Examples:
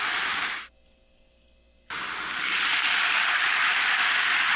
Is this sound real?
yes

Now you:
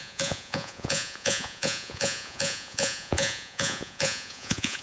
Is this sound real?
no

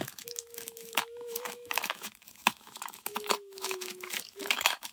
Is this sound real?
no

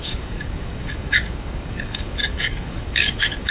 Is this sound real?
no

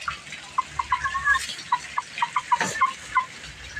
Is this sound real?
yes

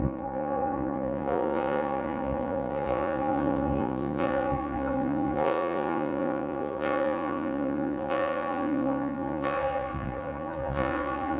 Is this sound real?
no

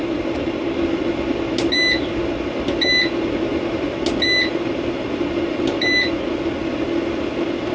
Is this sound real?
yes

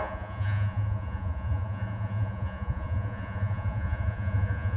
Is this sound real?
no